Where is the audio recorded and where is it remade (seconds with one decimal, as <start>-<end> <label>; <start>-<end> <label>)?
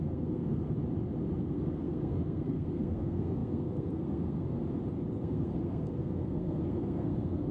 0.0-0.8 remade; 0.8-1.4 recorded; 1.4-4.6 remade; 4.6-5.1 recorded; 5.1-7.5 remade